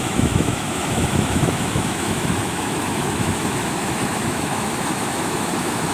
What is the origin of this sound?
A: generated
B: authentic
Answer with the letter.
A